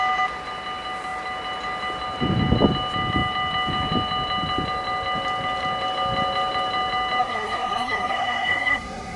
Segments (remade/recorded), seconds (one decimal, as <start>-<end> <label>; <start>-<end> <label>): 0.0-7.2 recorded; 7.2-9.2 remade